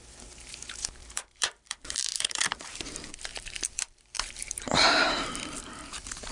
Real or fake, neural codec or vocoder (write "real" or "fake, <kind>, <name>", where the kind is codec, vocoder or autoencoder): fake, vocoder, BigVGAN v2